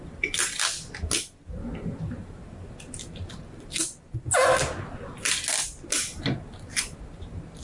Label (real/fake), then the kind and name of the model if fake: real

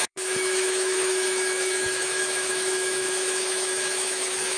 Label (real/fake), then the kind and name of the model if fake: fake, autoencoder, DAC-VAE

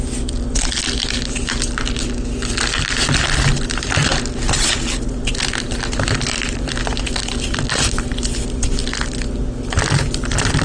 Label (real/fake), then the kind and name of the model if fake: real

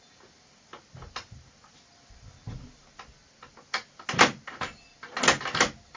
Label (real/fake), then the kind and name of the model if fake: real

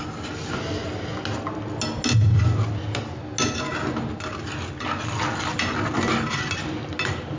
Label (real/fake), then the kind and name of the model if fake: real